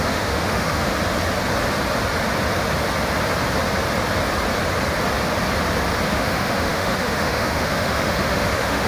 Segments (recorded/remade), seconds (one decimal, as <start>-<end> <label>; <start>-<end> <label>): 0.0-0.9 remade; 0.9-6.1 recorded; 6.1-8.9 remade